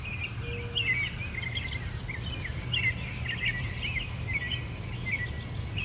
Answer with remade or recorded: recorded